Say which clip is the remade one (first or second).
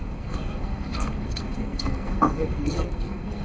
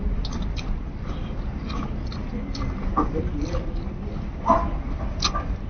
first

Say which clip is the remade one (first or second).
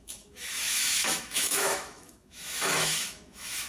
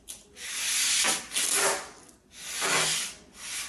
first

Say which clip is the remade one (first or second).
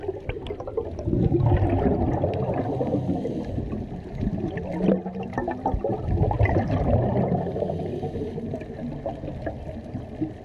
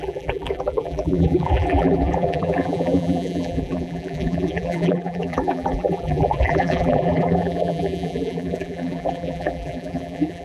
second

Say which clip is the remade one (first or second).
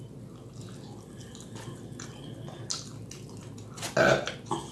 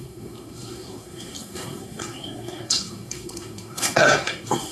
second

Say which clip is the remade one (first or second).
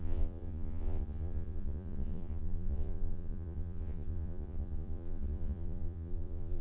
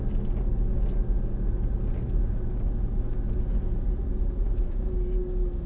first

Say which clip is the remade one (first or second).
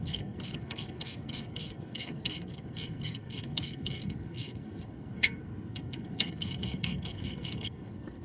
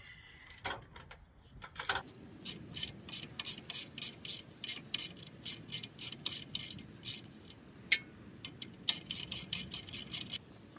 first